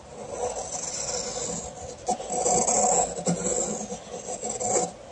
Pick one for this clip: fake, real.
real